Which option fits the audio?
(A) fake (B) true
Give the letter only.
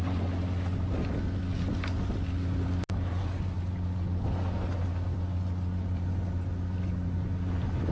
B